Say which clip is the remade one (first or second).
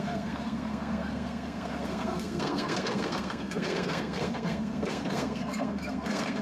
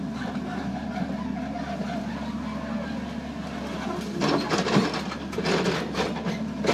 first